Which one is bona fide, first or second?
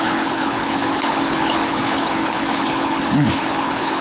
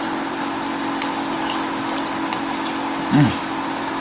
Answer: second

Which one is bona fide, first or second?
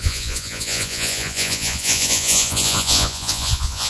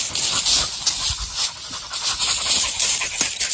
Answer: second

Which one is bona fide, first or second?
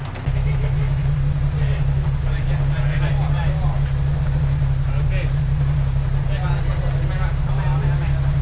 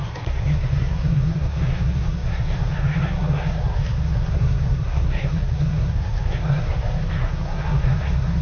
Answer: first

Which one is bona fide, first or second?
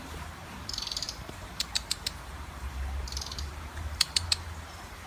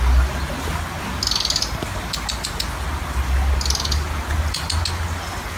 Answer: second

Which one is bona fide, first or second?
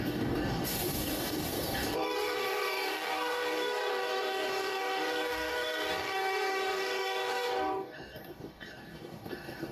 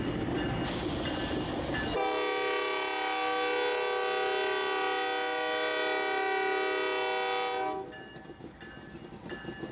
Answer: second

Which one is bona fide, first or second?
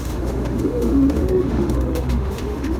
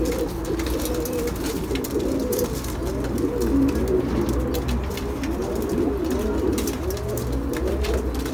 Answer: second